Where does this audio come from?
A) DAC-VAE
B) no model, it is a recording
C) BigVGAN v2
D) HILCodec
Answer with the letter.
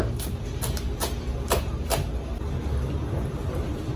C